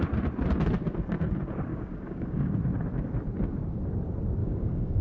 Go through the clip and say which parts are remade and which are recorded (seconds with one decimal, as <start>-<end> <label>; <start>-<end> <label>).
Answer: 0.0-1.7 recorded; 1.7-2.5 remade; 2.5-4.4 recorded; 4.4-5.0 remade